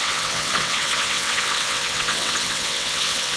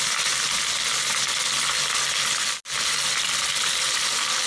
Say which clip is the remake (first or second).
first